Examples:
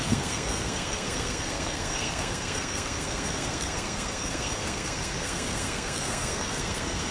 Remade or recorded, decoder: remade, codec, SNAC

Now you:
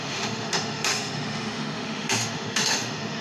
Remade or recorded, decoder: remade, autoencoder, DAC-VAE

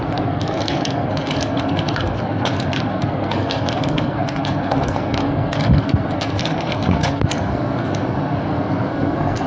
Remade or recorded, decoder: remade, codec, SNAC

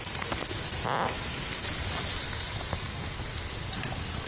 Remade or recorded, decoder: recorded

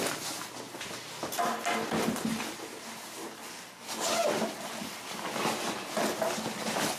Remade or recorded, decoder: recorded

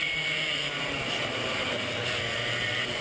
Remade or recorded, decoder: remade, vocoder, BigVGAN v2